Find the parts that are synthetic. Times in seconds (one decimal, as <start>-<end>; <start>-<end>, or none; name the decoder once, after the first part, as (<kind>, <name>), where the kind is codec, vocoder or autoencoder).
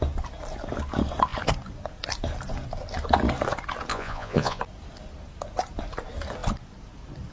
3.9-4.6 (vocoder, Vocos)